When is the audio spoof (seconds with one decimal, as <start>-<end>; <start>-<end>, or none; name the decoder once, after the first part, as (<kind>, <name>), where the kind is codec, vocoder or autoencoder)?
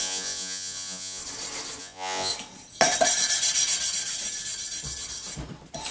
0.0-1.2 (vocoder, Vocos); 1.8-2.3